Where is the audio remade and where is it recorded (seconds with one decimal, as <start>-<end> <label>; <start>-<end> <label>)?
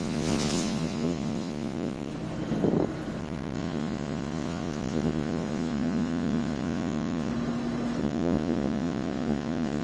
0.0-2.1 remade; 2.1-3.2 recorded; 3.2-7.3 remade; 7.3-8.0 recorded; 8.0-9.8 remade